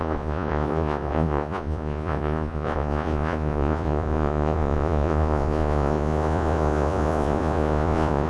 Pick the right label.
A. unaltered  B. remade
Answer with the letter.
B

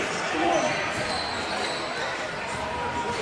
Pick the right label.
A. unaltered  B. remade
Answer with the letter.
B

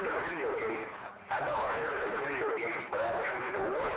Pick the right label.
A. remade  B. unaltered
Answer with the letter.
A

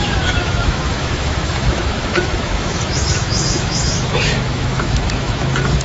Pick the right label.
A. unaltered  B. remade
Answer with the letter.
B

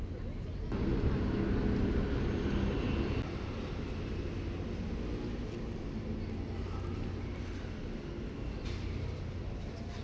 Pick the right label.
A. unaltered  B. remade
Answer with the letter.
A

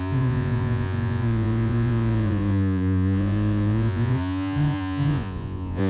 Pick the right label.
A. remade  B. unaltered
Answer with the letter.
A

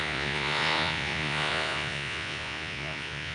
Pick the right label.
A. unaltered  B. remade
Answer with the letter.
B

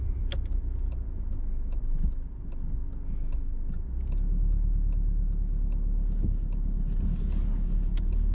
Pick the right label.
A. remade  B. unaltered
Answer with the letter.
B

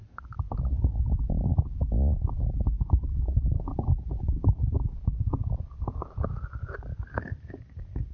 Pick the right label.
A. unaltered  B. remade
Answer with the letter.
A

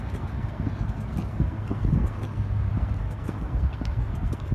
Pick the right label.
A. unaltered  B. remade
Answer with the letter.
B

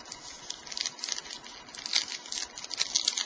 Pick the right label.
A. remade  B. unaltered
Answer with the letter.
B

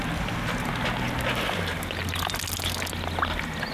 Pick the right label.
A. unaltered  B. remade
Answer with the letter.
A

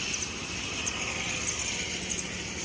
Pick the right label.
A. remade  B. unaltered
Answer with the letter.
B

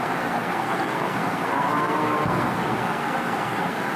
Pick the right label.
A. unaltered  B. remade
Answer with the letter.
B